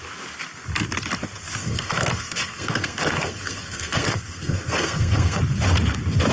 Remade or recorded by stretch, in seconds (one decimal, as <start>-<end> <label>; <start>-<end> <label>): 0.0-1.6 recorded; 1.6-5.4 remade; 5.4-6.3 recorded